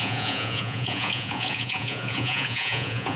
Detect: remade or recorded remade